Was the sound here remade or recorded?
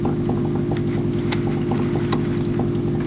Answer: recorded